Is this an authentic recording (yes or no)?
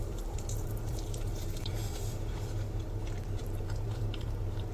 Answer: no